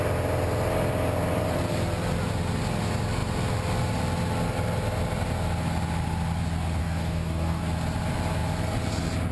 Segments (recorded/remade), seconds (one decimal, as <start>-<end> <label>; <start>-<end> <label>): 0.0-6.8 recorded; 6.8-7.6 remade; 7.6-9.3 recorded